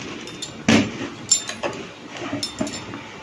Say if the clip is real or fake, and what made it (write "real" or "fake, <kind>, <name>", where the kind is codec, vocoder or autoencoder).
real